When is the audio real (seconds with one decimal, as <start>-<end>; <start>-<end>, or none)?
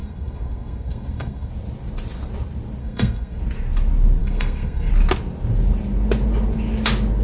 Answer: 1.5-2.8; 3.4-4.2; 4.9-7.2